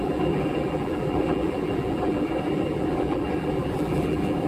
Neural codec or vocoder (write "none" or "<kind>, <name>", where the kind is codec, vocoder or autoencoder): vocoder, BigVGAN v2